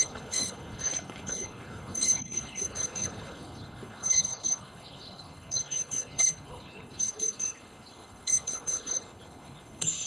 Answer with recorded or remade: remade